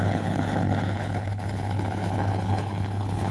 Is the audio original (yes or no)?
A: no